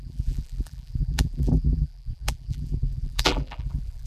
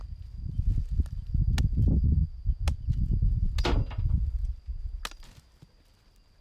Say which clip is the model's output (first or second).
first